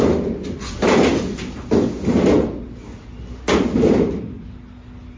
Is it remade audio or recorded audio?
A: recorded